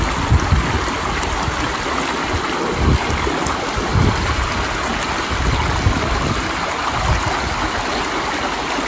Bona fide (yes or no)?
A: yes